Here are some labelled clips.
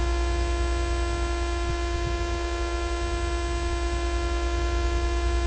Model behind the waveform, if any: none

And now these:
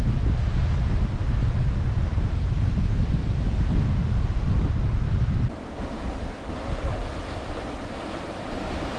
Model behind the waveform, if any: none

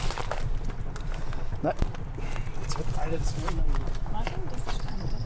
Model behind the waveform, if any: none